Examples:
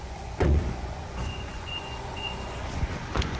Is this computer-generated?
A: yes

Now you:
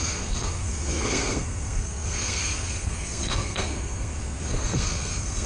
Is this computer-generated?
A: yes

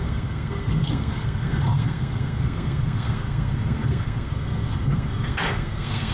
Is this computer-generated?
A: yes